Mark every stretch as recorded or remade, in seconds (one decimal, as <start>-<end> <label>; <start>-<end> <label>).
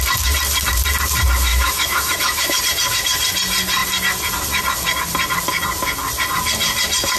0.0-1.5 recorded; 1.5-2.6 remade; 2.6-7.2 recorded